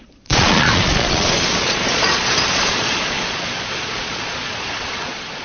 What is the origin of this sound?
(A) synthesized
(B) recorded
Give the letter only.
A